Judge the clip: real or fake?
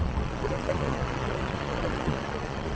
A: fake